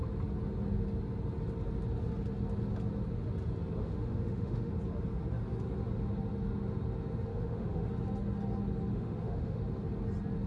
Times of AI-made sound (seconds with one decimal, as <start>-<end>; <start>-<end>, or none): 3.8-4.7; 7.3-7.9; 8.9-9.6